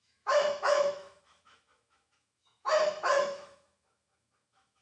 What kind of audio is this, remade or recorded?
remade